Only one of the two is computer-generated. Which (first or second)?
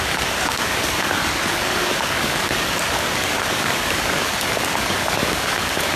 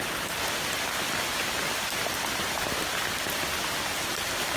first